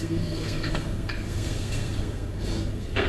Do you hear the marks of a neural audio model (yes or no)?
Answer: yes